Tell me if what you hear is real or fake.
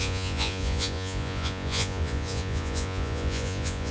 fake